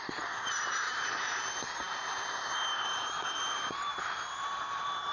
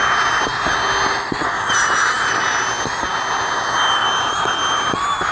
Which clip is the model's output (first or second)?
first